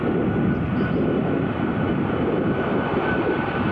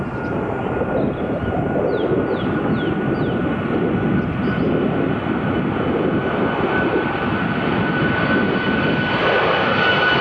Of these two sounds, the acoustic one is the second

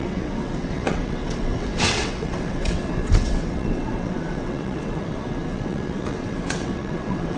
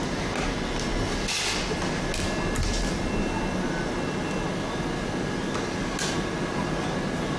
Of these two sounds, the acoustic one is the second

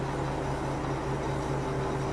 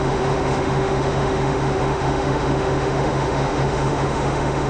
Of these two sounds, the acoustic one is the first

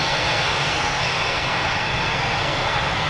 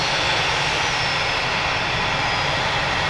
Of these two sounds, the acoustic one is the second